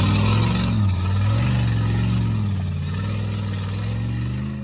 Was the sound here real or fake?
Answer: real